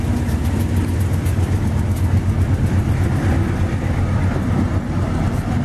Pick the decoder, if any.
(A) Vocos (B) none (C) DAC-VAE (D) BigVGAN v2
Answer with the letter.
B